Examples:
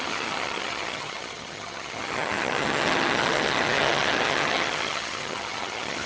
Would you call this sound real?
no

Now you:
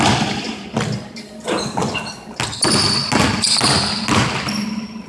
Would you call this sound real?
yes